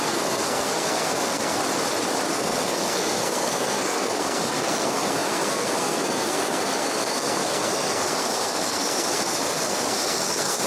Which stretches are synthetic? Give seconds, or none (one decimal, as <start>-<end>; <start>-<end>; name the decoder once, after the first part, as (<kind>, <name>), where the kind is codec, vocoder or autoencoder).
0.0-1.6 (codec, SNAC); 2.3-10.7